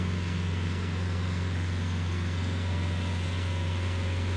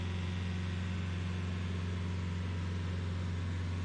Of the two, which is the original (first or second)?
second